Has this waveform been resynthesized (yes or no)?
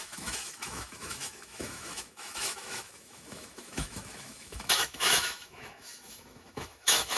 yes